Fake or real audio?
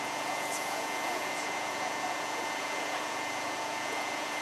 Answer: fake